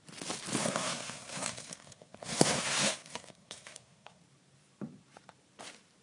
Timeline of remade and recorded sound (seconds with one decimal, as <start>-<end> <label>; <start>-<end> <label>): 0.0-0.6 recorded; 0.6-4.2 remade; 4.2-6.0 recorded